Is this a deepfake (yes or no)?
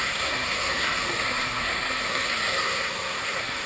yes